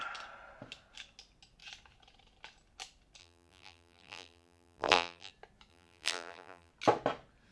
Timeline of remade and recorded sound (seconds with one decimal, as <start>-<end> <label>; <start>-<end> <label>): 0.0-3.2 recorded; 3.2-5.3 remade; 5.3-5.7 recorded; 5.7-6.7 remade; 6.7-7.5 recorded